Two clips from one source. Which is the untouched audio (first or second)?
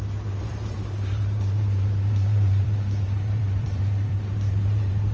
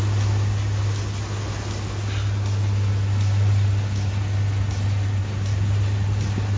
second